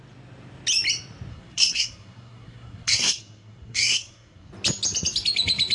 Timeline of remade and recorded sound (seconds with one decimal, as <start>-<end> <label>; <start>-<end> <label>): 0.0-1.3 recorded; 1.3-4.5 remade; 4.5-5.7 recorded